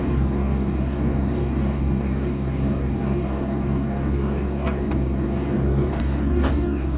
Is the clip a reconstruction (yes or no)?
yes